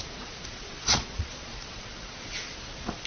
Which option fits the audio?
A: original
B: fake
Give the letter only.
B